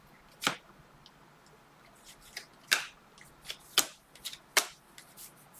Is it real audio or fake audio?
real